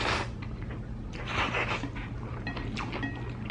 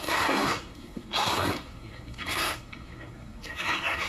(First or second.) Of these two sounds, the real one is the first